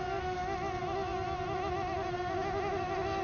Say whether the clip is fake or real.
real